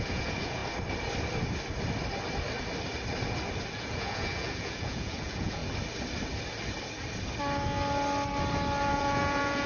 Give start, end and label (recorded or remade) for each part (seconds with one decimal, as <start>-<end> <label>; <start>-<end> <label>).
0.0-0.6 remade; 0.6-3.7 recorded; 3.7-5.6 remade; 5.6-8.9 recorded; 8.9-9.7 remade